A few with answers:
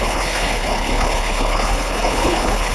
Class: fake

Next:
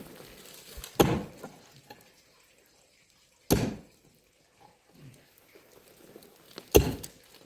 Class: real